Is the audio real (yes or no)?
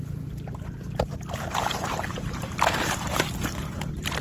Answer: no